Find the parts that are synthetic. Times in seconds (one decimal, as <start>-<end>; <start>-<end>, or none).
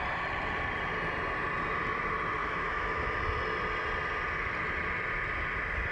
2.4-3.2